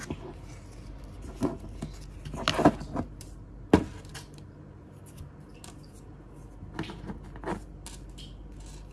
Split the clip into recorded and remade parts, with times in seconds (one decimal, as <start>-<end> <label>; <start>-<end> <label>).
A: 0.0-8.9 recorded

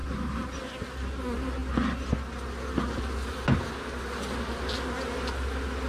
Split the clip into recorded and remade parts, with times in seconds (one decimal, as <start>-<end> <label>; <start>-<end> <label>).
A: 0.0-0.6 remade; 0.6-5.9 recorded